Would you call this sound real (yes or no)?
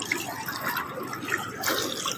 yes